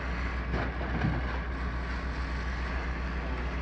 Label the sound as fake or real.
real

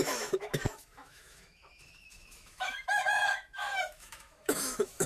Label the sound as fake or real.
fake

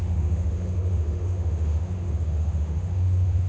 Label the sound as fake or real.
fake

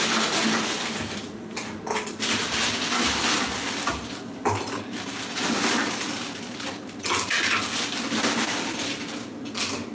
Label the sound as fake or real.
real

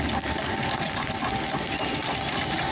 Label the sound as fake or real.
real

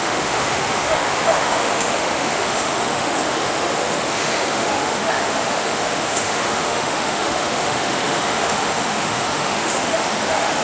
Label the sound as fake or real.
fake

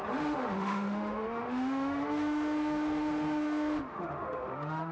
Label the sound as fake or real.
fake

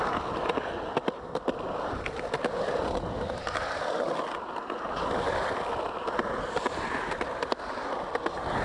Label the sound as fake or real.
real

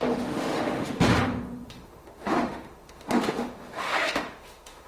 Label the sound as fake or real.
fake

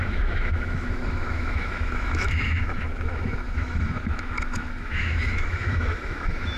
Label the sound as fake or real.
fake